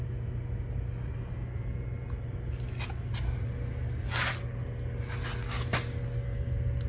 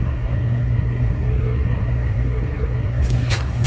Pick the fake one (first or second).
second